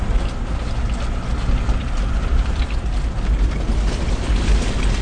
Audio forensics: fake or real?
real